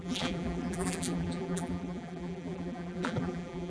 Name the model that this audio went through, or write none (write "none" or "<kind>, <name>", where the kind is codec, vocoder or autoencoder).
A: vocoder, BigVGAN v2